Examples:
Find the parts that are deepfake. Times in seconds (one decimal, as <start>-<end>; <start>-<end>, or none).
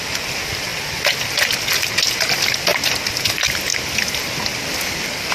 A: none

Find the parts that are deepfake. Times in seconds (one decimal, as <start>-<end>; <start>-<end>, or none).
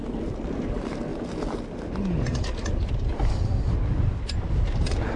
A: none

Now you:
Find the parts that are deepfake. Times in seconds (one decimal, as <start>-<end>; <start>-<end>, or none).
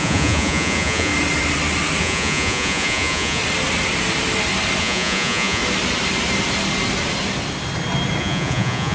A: 0.0-1.1; 2.0-3.4; 4.8-5.6; 8.2-8.9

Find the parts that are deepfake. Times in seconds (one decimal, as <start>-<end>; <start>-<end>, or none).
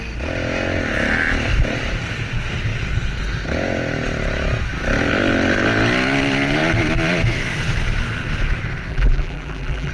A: 8.9-9.9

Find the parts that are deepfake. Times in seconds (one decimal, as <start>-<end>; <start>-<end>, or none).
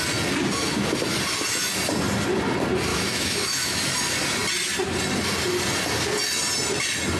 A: 2.9-3.8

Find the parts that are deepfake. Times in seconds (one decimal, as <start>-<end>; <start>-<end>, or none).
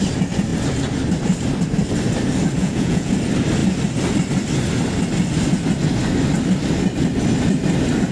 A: 2.6-3.1